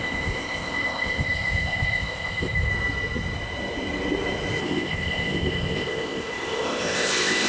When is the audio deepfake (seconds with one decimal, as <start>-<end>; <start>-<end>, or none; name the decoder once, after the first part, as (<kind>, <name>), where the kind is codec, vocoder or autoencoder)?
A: 0.0-2.7 (codec, ZipCodec); 4.6-7.5